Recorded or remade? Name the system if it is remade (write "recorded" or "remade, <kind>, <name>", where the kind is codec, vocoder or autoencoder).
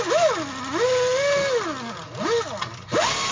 recorded